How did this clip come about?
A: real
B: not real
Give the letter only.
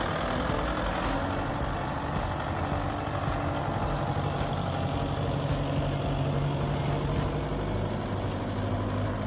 A